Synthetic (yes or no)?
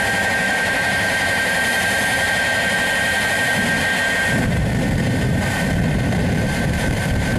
yes